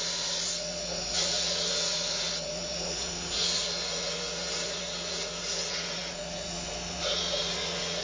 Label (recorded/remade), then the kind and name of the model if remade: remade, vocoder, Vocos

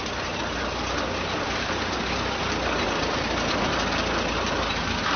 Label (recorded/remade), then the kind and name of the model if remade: recorded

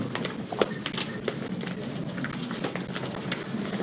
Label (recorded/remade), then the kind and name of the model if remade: recorded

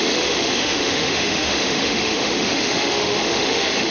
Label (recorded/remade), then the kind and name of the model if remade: remade, autoencoder, DAC-VAE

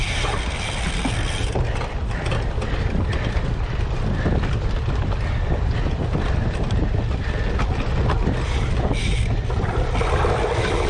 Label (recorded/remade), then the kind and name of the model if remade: recorded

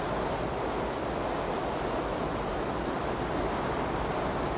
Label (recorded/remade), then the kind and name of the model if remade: recorded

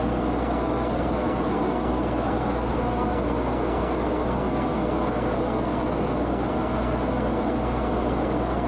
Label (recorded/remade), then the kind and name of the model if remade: remade, codec, SNAC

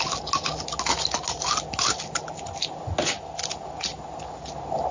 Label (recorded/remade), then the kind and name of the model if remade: recorded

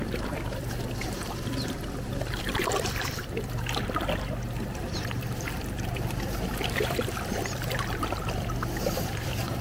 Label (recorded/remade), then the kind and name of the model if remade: remade, vocoder, BigVGAN v2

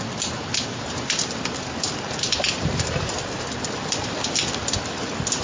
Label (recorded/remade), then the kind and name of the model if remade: recorded